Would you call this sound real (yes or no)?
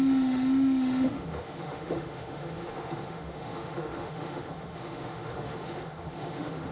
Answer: no